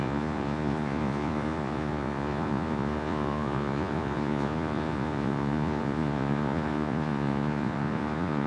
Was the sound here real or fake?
fake